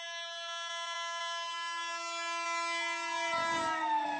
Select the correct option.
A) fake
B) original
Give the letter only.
B